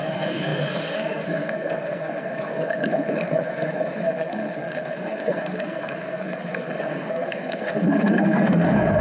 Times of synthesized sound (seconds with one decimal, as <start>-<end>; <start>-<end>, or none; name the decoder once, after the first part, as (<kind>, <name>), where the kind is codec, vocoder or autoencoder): 0.0-9.0 (codec, SNAC)